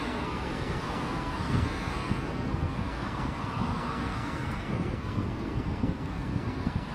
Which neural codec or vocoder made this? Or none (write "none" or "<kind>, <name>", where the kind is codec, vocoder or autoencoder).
codec, SNAC